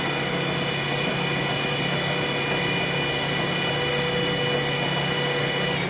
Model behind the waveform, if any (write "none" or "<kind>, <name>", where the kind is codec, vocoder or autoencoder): none